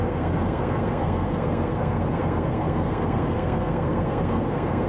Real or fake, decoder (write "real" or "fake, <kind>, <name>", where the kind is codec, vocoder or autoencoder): fake, codec, SNAC